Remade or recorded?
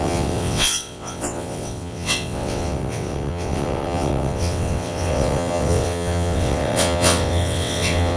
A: remade